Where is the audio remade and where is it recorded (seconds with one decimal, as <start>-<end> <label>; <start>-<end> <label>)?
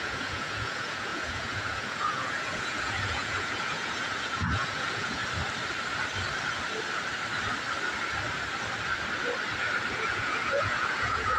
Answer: 0.0-5.2 remade; 5.2-9.9 recorded; 9.9-11.4 remade